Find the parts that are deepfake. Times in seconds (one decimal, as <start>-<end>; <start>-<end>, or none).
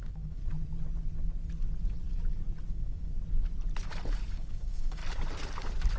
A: 0.0-0.4; 2.7-3.1; 4.3-5.0